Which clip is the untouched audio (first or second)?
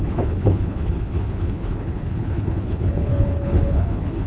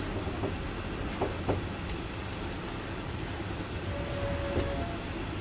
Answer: second